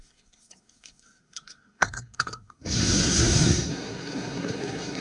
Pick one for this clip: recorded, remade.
remade